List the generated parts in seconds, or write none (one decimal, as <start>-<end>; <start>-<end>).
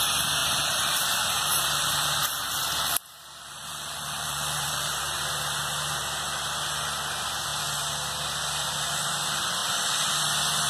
0.4-5.0